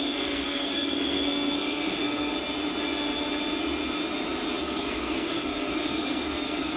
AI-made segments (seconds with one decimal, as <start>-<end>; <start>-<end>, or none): 0.0-2.3; 4.6-6.8